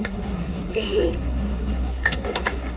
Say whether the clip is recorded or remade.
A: remade